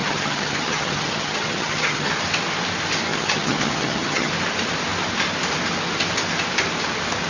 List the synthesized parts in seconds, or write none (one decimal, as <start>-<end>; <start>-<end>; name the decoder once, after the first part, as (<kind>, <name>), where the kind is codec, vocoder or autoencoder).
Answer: 0.0-2.1 (vocoder, HiFi-GAN); 3.1-4.3